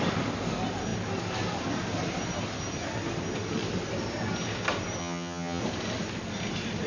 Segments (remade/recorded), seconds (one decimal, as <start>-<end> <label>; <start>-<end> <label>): 0.0-5.0 recorded; 5.0-5.6 remade; 5.6-6.9 recorded